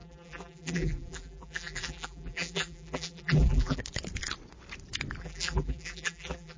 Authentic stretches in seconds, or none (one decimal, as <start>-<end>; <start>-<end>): 3.8-5.2